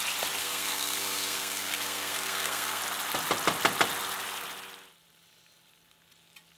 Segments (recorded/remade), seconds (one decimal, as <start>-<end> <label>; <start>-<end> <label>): 0.0-0.4 recorded; 0.4-2.8 remade; 2.8-6.6 recorded